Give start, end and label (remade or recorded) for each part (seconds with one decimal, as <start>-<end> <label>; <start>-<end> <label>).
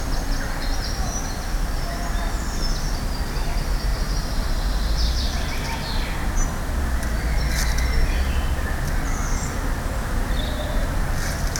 0.0-11.6 recorded